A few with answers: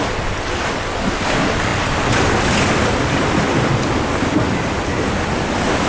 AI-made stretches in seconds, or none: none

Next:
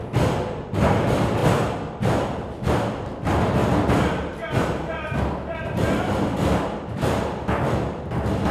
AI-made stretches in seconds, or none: 1.4-2.0 (vocoder, BigVGAN v2); 3.6-5.2

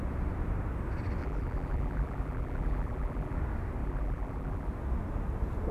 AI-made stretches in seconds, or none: 1.2-3.4 (vocoder, BigVGAN v2); 3.8-4.7

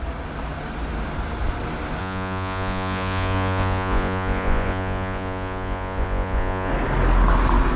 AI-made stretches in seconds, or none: 2.0-6.7 (vocoder, Vocos)

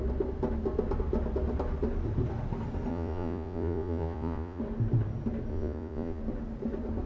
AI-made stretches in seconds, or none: 2.9-4.6 (vocoder, Vocos); 5.5-6.2

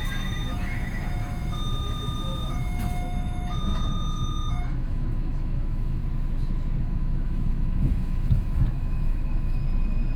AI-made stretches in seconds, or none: 0.0-6.0 (autoencoder, DAC-VAE); 6.8-9.6

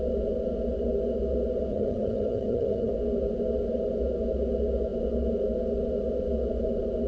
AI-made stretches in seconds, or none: 1.7-2.9 (vocoder, HiFi-GAN)